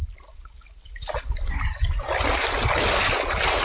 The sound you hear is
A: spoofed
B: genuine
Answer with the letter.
B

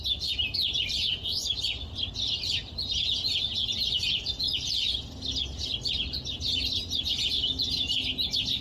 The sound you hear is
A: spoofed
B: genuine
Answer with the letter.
B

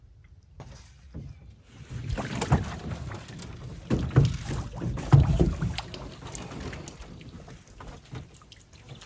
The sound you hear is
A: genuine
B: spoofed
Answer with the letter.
A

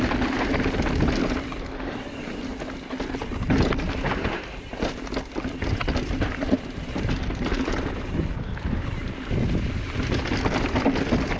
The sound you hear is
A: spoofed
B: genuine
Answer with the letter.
B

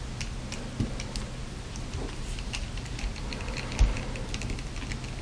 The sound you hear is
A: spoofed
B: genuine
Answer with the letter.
B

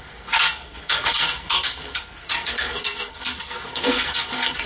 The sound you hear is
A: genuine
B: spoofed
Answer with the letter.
B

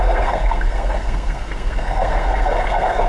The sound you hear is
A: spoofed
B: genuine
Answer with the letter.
A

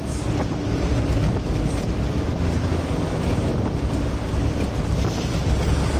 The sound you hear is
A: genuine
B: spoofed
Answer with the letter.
A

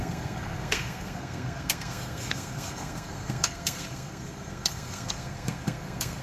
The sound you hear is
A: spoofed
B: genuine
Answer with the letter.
A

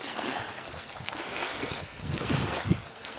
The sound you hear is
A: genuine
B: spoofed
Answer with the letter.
B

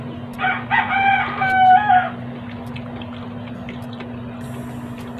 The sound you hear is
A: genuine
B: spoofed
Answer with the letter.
A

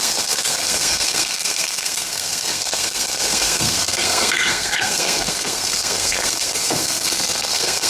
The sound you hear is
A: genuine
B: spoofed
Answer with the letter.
B